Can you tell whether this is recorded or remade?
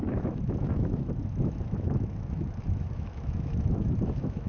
remade